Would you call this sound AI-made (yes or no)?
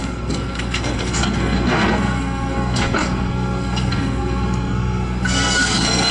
yes